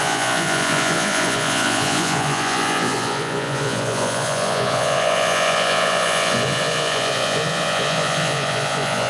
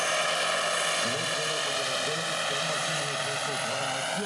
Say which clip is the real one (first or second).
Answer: second